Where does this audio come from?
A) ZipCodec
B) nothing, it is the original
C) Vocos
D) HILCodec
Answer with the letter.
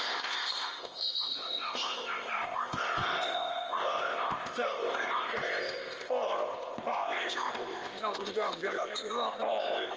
A